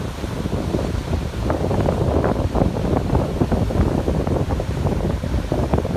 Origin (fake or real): fake